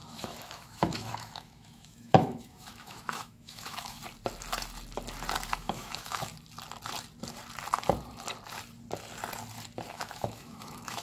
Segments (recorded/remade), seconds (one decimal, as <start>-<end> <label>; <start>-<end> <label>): 0.0-4.0 remade; 4.0-5.6 recorded; 5.6-6.3 remade; 6.3-9.9 recorded; 9.9-11.0 remade